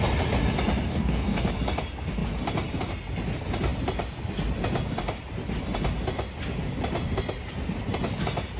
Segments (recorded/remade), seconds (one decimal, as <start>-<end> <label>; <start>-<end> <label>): 0.0-0.9 recorded; 0.9-1.5 remade; 1.5-8.6 recorded